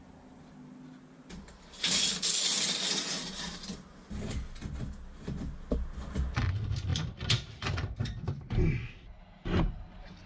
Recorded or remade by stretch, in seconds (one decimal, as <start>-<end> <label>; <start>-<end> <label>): 0.0-10.3 recorded